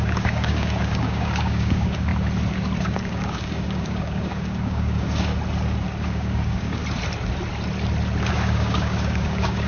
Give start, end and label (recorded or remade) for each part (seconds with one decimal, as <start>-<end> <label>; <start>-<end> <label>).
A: 0.0-2.1 remade; 2.1-2.8 recorded; 2.8-5.3 remade; 5.3-6.0 recorded; 6.0-6.8 remade; 6.8-8.3 recorded; 8.3-9.7 remade